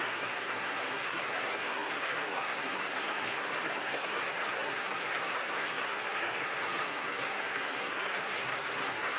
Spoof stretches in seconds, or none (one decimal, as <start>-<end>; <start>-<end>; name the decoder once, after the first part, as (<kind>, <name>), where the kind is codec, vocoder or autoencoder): 0.0-9.2 (codec, SNAC)